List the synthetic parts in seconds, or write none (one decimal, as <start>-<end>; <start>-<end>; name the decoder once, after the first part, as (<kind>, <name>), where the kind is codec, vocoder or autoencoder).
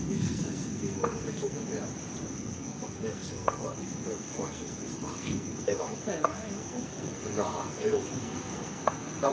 0.0-1.7 (codec, SNAC); 2.3-9.3